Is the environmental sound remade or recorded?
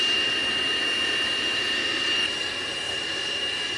recorded